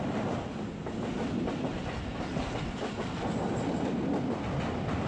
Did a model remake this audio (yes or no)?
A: no